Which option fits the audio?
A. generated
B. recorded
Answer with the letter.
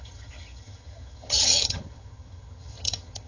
A